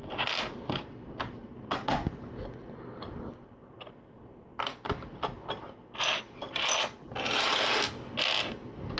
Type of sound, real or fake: real